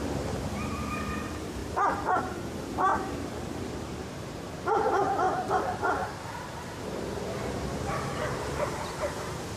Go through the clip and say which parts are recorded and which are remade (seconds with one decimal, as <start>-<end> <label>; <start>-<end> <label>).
0.0-1.6 remade; 1.6-2.2 recorded; 2.2-9.6 remade